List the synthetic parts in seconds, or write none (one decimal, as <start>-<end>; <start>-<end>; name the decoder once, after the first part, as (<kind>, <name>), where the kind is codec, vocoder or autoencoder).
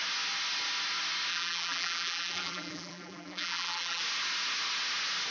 1.3-4.0 (vocoder, BigVGAN v2)